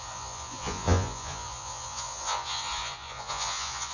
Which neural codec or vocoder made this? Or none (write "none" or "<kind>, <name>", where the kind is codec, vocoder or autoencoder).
vocoder, Vocos